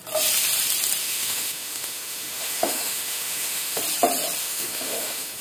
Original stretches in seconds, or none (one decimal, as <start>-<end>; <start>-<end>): 0.0-1.0; 3.8-4.4

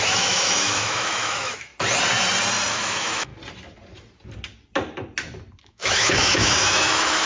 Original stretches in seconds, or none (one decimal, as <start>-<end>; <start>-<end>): 1.7-2.7; 3.3-5.6

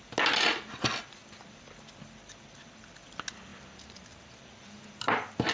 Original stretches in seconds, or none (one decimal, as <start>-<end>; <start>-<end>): 0.0-5.5

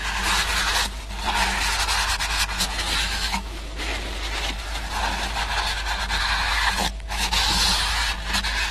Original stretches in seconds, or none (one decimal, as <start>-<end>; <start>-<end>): 0.0-2.6; 3.9-6.2; 8.0-8.7

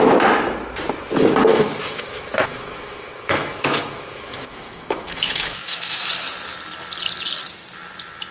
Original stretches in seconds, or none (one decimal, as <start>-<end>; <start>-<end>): 0.0-1.5; 6.1-8.3

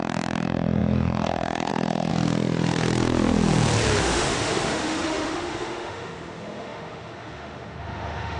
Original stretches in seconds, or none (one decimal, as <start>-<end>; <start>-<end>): 2.1-4.0